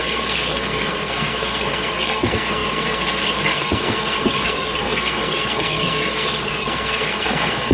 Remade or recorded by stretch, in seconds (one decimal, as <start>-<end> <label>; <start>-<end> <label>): 0.0-7.7 remade